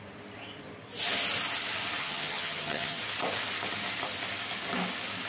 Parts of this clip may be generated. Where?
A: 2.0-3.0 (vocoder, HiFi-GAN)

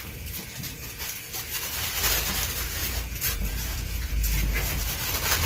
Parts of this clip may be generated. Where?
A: 2.8-4.1 (vocoder, Vocos)

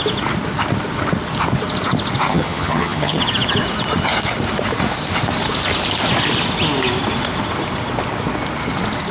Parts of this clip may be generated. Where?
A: 2.3-3.2 (vocoder, HiFi-GAN)

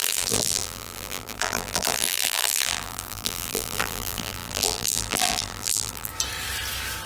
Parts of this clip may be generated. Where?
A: 0.0-6.1 (vocoder, BigVGAN v2)